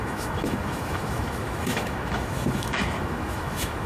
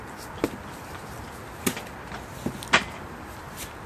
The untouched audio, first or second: second